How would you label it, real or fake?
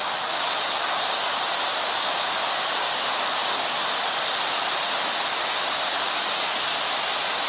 real